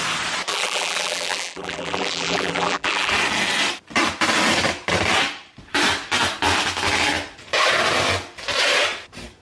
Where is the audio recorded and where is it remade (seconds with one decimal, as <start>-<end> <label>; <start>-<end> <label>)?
0.0-0.5 recorded; 0.5-3.1 remade; 3.1-9.4 recorded